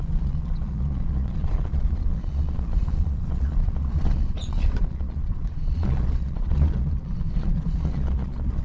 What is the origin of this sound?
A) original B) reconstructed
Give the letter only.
B